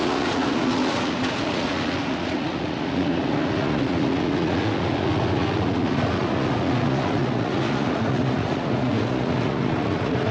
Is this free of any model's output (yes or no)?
no